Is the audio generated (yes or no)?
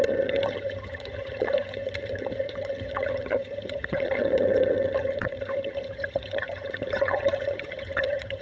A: yes